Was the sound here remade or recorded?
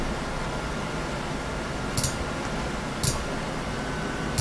recorded